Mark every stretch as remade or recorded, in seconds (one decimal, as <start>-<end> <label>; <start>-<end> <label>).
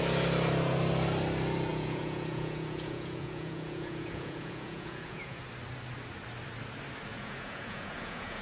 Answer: 0.0-1.7 recorded; 1.7-5.4 remade; 5.4-7.1 recorded; 7.1-8.4 remade